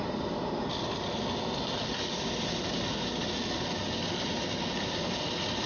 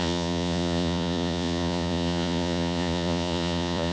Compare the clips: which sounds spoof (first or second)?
second